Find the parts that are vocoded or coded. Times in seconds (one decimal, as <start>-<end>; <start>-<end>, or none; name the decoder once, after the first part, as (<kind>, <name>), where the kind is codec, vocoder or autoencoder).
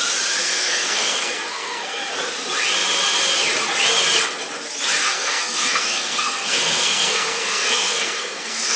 0.4-2.0 (codec, SNAC); 5.0-8.8